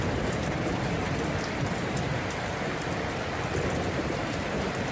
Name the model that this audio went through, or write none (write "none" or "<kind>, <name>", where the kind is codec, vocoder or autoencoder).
none